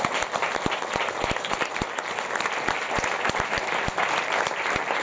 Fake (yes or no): no